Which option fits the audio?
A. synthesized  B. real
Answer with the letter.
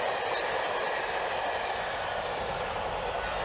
B